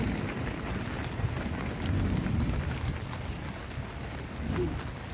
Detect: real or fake real